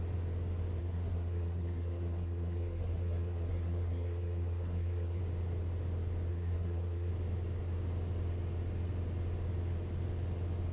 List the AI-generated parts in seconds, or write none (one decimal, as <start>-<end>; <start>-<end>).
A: 0.8-5.2; 6.3-7.1